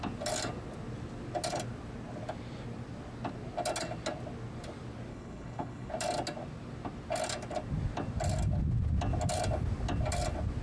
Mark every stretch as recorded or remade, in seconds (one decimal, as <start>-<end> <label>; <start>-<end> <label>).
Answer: 0.0-5.1 recorded; 5.1-5.9 remade; 5.9-10.6 recorded